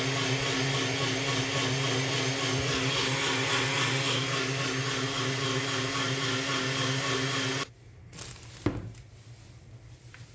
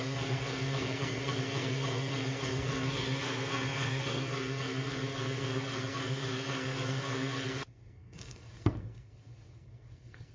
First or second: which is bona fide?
first